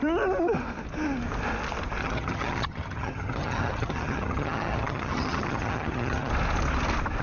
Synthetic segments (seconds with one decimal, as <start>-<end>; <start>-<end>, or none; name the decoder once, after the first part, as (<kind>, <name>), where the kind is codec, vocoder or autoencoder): 2.0-6.3 (vocoder, HiFi-GAN)